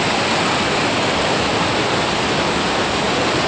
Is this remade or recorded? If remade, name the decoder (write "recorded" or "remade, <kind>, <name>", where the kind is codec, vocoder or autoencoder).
recorded